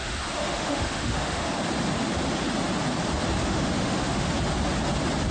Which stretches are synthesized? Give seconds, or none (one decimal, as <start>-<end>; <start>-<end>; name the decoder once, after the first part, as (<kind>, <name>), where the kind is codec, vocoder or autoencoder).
0.0-1.5 (autoencoder, DAC-VAE); 3.4-4.3